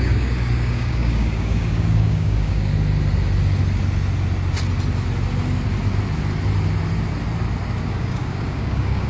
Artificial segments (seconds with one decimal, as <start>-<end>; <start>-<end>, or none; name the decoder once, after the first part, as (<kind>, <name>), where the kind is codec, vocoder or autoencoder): 0.0-2.7 (codec, DAC); 7.8-9.1